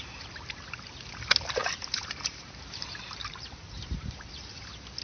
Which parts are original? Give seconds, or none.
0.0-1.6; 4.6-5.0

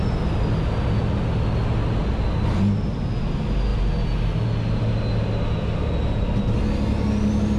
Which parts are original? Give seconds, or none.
0.0-7.6